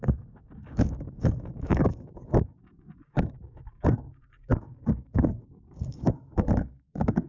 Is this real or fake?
fake